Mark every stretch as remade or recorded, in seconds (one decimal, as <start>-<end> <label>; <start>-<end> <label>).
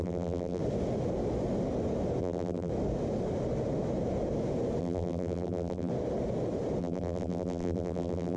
0.0-0.6 remade; 0.6-2.2 recorded; 2.2-2.7 remade; 2.7-4.8 recorded; 4.8-5.9 remade; 5.9-6.8 recorded; 6.8-8.4 remade